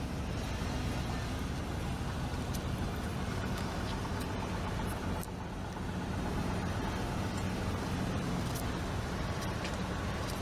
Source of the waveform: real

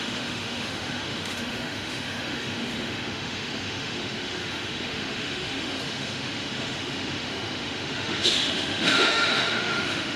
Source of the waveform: fake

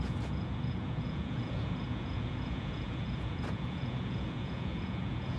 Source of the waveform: fake